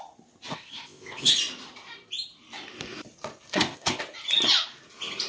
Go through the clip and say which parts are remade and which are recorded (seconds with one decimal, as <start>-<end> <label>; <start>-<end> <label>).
0.0-0.5 recorded; 0.5-1.3 remade; 1.3-3.5 recorded; 3.5-4.0 remade; 4.0-5.3 recorded